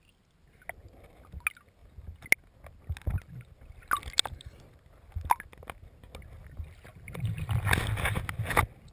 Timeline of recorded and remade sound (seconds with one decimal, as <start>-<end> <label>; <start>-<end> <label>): 0.0-6.9 recorded; 6.9-7.6 remade; 7.6-8.9 recorded